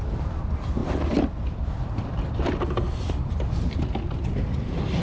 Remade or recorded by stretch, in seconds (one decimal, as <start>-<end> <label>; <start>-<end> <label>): 0.0-5.0 recorded